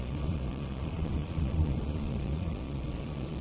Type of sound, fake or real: fake